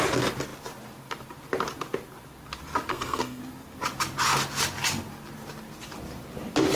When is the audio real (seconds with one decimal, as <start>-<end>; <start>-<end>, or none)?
0.0-2.9; 3.4-6.8

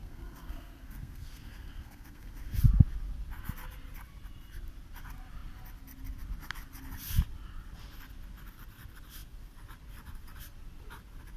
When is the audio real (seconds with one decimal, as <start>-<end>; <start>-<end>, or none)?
2.6-11.4

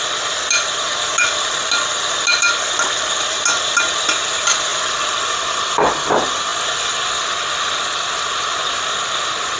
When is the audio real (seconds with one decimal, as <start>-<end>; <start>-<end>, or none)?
0.0-9.6